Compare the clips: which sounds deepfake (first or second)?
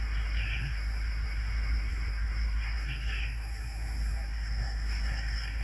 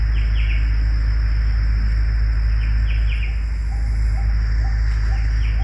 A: first